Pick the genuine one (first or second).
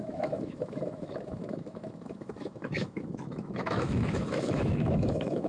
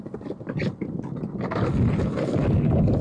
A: second